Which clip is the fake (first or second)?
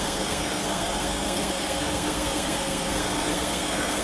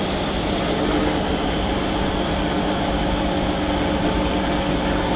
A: first